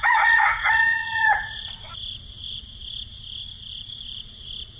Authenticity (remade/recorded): remade